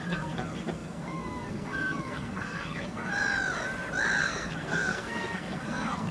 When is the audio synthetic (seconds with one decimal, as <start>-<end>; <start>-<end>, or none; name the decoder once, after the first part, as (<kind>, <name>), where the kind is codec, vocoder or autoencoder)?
0.0-3.1 (codec, SNAC); 4.2-6.1